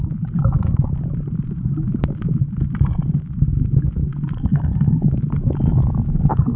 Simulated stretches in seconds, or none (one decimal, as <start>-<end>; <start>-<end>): none